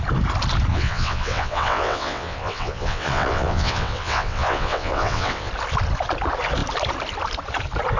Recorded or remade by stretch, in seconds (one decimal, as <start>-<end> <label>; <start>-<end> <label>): 0.0-0.7 recorded; 0.7-5.5 remade; 5.5-8.0 recorded

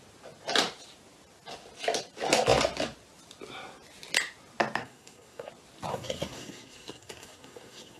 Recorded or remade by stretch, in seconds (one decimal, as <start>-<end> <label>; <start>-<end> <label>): 0.0-4.8 recorded; 4.8-5.5 remade; 5.5-5.9 recorded; 5.9-8.0 remade

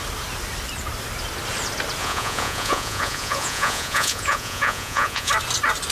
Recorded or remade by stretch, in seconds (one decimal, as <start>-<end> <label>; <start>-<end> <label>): 0.0-2.0 recorded; 2.0-5.3 remade; 5.3-5.9 recorded

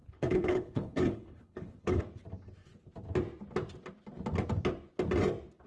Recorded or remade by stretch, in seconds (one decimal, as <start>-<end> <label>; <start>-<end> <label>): 0.0-2.0 remade; 2.0-5.7 recorded

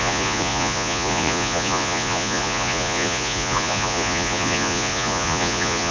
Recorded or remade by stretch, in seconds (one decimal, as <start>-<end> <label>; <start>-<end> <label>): 0.0-5.9 remade

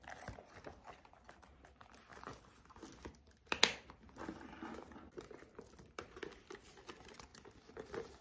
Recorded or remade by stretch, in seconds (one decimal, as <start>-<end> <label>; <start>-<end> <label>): 0.0-7.3 recorded; 7.3-8.2 remade

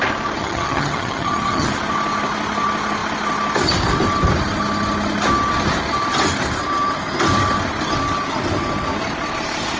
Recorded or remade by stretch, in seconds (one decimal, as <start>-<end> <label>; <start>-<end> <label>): 0.0-0.4 recorded; 0.4-1.7 remade; 1.7-9.8 recorded

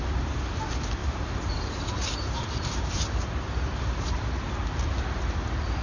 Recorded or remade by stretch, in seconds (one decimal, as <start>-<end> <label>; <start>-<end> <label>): 0.0-1.0 recorded; 1.0-4.5 remade; 4.5-5.8 recorded